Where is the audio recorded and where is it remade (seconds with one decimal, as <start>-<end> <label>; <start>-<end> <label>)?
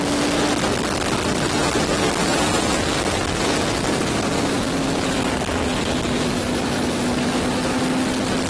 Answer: 0.0-2.3 recorded; 2.3-7.4 remade; 7.4-8.5 recorded